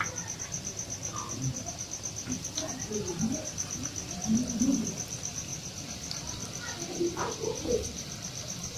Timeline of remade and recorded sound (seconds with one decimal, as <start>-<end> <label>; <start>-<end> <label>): 0.0-8.8 recorded

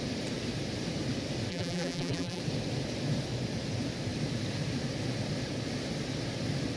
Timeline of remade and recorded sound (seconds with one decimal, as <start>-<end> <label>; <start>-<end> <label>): 0.0-1.5 recorded; 1.5-2.4 remade; 2.4-6.8 recorded

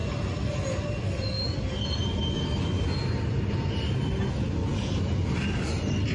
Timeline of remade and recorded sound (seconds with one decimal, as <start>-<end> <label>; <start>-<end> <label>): 0.0-6.1 recorded

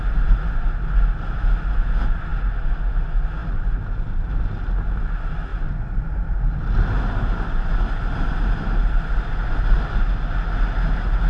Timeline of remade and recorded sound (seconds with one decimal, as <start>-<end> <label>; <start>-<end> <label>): 0.0-11.3 recorded

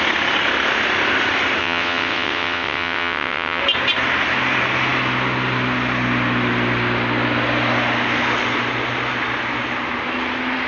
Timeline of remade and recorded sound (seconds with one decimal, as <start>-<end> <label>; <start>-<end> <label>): 0.0-1.6 recorded; 1.6-3.6 remade; 3.6-10.7 recorded

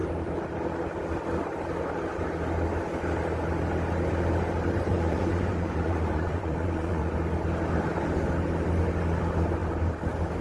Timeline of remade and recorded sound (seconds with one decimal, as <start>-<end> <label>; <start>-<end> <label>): 0.0-4.9 recorded; 4.9-7.1 remade; 7.1-10.4 recorded

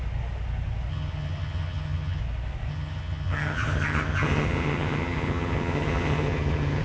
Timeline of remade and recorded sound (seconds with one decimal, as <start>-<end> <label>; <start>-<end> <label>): 0.0-0.9 recorded; 0.9-2.2 remade; 2.2-2.7 recorded; 2.7-6.8 remade